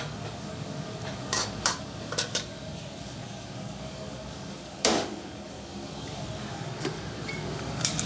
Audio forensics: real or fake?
fake